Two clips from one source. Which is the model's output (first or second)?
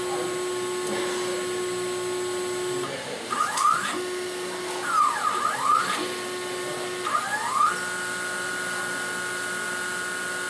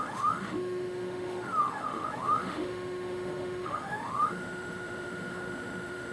second